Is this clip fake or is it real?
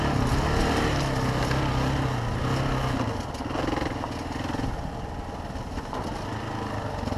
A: real